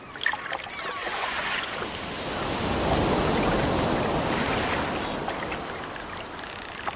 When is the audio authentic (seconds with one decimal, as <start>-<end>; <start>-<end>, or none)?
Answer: 0.0-1.0; 1.7-7.0